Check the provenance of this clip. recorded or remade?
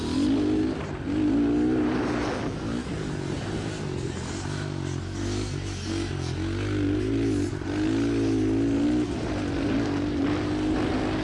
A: recorded